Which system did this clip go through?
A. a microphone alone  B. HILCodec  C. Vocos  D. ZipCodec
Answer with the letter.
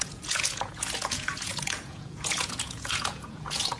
C